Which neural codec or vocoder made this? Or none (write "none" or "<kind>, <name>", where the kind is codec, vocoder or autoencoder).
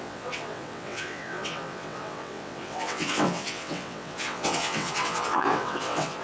vocoder, WaveNeXt